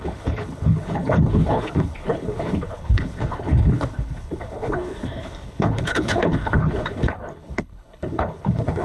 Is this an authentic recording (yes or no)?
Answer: no